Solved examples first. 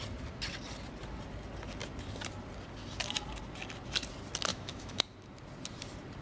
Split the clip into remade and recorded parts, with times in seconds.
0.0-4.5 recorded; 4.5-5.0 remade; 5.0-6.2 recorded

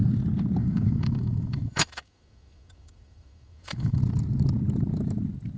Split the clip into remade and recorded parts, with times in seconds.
0.0-0.6 recorded; 0.6-4.0 remade; 4.0-5.6 recorded

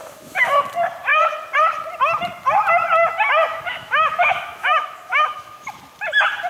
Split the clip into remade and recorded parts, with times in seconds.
0.0-0.6 remade; 0.6-3.5 recorded; 3.5-5.8 remade; 5.8-6.5 recorded

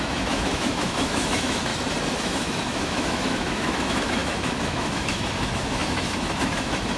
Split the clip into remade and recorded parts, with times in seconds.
0.0-1.7 remade; 1.7-2.2 recorded; 2.2-7.0 remade